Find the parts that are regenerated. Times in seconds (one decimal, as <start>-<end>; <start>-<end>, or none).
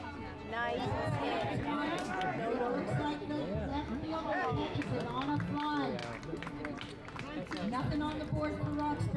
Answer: 3.7-4.8